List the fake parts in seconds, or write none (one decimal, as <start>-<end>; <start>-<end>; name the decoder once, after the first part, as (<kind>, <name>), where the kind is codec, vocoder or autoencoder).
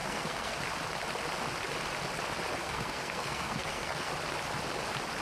0.0-0.6 (codec, SNAC); 2.6-4.1